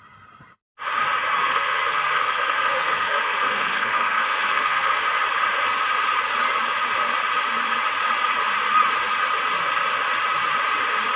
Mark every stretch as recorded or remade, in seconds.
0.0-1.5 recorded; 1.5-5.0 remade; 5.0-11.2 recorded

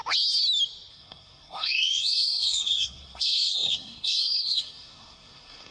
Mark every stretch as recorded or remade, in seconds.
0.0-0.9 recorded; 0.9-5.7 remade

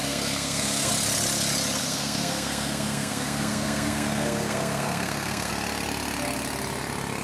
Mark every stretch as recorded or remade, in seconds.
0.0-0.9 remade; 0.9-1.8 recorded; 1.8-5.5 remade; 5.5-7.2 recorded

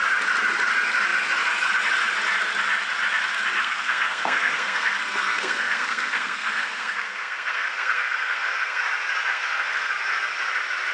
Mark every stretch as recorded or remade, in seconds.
0.0-3.6 recorded; 3.6-8.8 remade; 8.8-9.3 recorded; 9.3-9.9 remade; 9.9-10.9 recorded

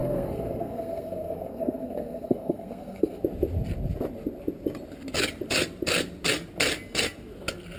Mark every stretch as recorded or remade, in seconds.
0.0-3.2 remade; 3.2-7.8 recorded

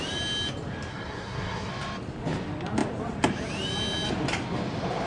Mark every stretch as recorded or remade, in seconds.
0.0-0.9 recorded; 0.9-1.7 remade; 1.7-5.1 recorded

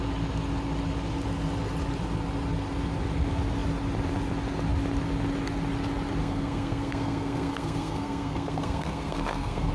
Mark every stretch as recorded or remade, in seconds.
0.0-6.2 recorded; 6.2-9.7 remade